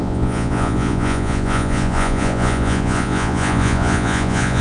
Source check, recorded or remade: remade